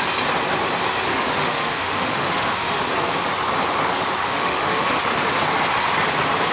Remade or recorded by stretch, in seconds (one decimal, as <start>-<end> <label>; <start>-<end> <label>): 0.0-1.1 recorded; 1.1-2.8 remade; 2.8-4.2 recorded; 4.2-5.0 remade; 5.0-6.5 recorded